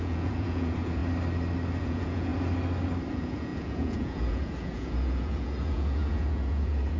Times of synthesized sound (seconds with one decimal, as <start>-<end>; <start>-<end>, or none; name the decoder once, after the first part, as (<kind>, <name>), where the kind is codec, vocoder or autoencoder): 0.0-1.0 (vocoder, Vocos); 1.8-2.3; 3.1-7.0